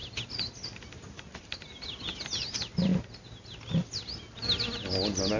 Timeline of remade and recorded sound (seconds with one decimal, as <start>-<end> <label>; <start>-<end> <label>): 0.0-5.4 recorded